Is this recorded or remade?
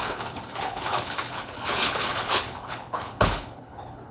remade